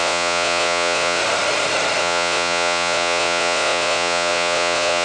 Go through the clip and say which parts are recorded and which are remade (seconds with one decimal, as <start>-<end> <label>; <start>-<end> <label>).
0.0-1.2 remade; 1.2-2.0 recorded; 2.0-5.0 remade